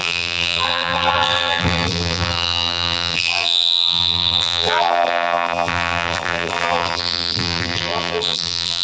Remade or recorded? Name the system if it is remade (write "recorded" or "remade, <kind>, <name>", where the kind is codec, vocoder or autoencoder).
remade, vocoder, BigVGAN v2